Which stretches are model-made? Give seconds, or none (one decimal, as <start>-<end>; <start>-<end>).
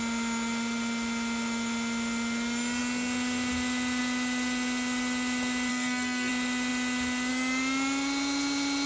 5.7-6.3